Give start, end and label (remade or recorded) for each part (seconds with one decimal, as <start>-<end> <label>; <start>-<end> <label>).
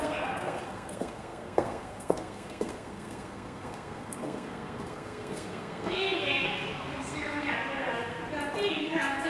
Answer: 0.0-8.2 remade; 8.2-8.7 recorded; 8.7-9.3 remade